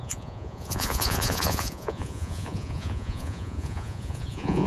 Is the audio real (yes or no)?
no